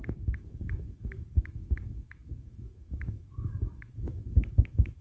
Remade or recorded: remade